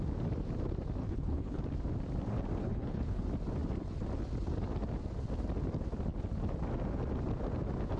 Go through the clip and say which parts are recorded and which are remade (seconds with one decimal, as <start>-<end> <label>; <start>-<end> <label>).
0.0-1.0 recorded; 1.0-1.6 remade; 1.6-2.6 recorded; 2.6-3.2 remade; 3.2-8.0 recorded